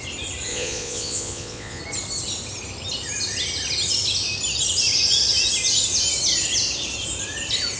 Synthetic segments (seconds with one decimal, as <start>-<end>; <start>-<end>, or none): 0.5-1.8